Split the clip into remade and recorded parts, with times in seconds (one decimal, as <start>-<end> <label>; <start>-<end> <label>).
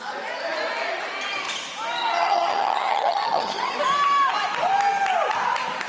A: 0.0-2.0 recorded; 2.0-3.8 remade; 3.8-5.9 recorded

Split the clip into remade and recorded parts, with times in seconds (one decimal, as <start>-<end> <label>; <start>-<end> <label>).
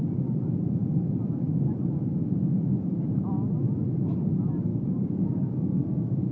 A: 0.0-4.7 recorded; 4.7-5.8 remade; 5.8-6.3 recorded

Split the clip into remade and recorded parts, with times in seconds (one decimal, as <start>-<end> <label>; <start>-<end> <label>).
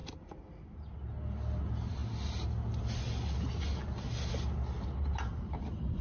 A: 0.0-6.0 recorded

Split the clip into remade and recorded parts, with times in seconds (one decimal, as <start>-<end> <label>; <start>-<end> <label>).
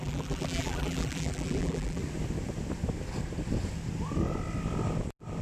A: 0.0-2.0 remade; 2.0-5.4 recorded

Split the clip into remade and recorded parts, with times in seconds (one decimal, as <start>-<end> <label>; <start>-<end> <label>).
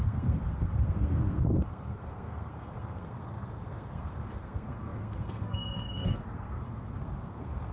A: 0.0-7.7 remade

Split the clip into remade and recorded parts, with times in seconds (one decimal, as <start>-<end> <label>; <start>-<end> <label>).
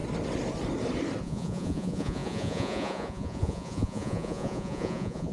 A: 0.0-1.2 recorded; 1.2-5.3 remade